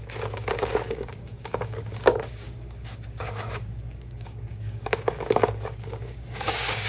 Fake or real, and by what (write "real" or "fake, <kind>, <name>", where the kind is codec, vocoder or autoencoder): fake, codec, DAC